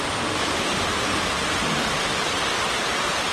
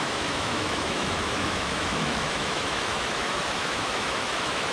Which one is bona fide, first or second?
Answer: first